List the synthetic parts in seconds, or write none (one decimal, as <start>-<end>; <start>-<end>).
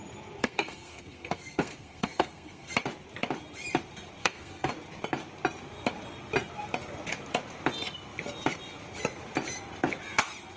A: 0.4-2.7; 4.2-4.7